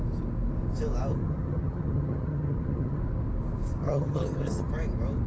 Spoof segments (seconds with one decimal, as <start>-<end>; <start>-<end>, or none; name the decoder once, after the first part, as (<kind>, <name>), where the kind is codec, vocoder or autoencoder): 1.1-3.0 (vocoder, HiFi-GAN); 3.8-4.7